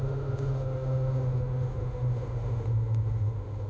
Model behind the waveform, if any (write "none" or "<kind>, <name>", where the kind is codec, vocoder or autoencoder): autoencoder, DAC-VAE